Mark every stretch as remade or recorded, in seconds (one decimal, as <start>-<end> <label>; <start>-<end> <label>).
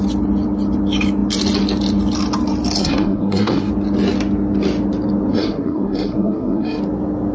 0.0-2.8 recorded; 2.8-3.7 remade; 3.7-5.3 recorded; 5.3-6.8 remade; 6.8-7.3 recorded